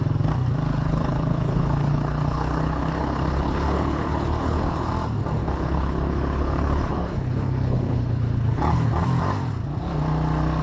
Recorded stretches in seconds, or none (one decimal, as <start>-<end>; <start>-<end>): 0.0-0.7; 4.9-5.4; 8.9-10.6